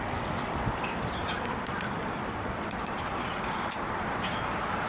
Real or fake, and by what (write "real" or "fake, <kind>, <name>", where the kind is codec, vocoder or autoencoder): fake, vocoder, BigVGAN v2